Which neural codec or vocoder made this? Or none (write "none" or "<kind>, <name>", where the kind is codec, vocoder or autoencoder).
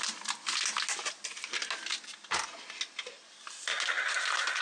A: none